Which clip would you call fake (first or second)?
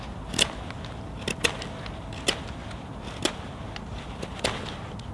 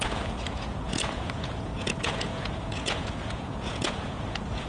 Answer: second